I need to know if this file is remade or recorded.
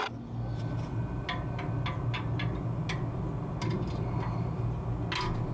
recorded